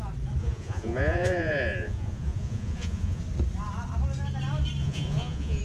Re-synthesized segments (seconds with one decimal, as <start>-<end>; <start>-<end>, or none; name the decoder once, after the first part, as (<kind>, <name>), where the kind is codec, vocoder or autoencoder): 0.4-3.2 (vocoder, Vocos); 4.8-5.6